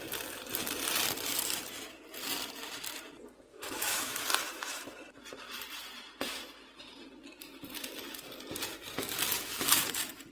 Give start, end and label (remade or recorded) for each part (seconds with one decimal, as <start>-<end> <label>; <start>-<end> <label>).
0.0-3.5 recorded; 3.5-4.2 remade; 4.2-9.3 recorded; 9.3-9.9 remade; 9.9-10.3 recorded